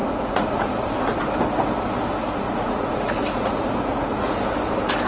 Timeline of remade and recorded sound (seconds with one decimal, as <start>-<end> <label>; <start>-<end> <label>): 0.0-1.2 remade; 1.2-2.2 recorded; 2.2-4.4 remade; 4.4-5.1 recorded